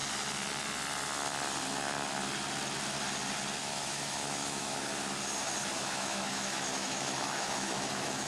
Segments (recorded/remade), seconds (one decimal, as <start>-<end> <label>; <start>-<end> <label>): 0.0-3.6 recorded; 3.6-4.9 remade; 4.9-5.6 recorded; 5.6-8.3 remade